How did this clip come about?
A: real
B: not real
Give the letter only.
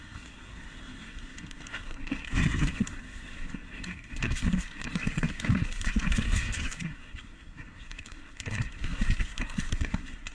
B